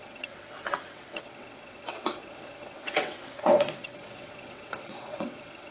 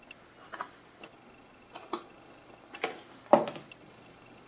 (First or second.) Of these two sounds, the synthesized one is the first